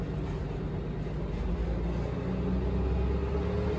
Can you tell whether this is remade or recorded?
recorded